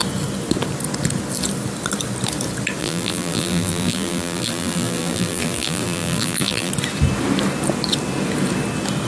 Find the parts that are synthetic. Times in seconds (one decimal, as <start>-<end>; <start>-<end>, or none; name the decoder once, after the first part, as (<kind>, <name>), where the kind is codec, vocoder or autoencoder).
2.8-6.7 (vocoder, BigVGAN v2)